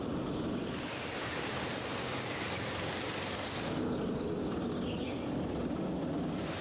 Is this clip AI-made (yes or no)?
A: no